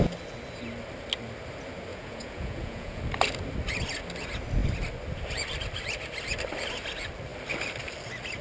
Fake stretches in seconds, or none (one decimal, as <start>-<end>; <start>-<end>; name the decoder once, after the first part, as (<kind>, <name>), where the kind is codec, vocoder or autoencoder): 1.9-3.0 (vocoder, Vocos)